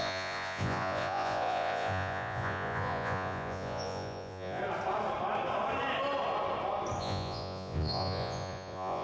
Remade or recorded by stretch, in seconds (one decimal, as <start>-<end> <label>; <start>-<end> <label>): 0.0-4.6 remade; 4.6-7.0 recorded; 7.0-9.0 remade